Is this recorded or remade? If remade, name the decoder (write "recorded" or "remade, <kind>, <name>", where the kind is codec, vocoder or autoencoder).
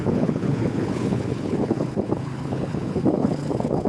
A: remade, codec, HILCodec